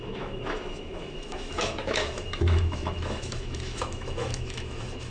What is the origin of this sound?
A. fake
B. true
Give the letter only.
A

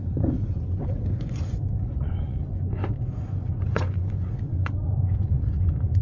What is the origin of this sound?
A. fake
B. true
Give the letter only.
A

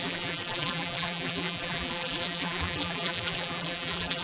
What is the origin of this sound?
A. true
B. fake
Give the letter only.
B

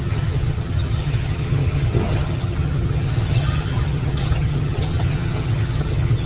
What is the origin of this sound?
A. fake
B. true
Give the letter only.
A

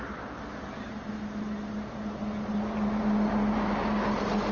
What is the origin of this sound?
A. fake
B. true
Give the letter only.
B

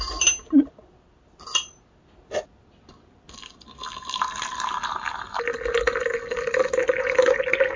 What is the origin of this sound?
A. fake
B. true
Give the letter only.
B